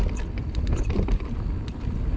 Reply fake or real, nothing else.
real